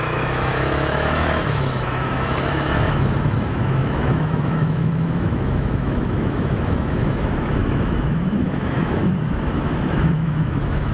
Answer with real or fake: fake